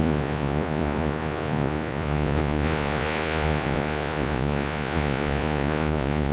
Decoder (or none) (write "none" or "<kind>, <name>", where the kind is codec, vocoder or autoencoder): vocoder, Vocos